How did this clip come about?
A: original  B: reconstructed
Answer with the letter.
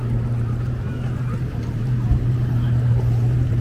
B